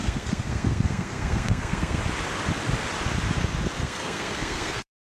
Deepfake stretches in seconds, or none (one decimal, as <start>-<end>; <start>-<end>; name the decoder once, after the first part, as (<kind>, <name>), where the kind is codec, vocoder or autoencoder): 0.0-2.0 (codec, SNAC); 3.8-5.2